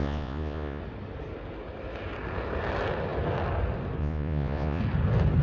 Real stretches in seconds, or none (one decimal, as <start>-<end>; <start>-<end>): 0.8-4.0; 4.8-5.4